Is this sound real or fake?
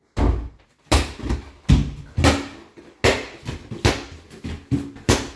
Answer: real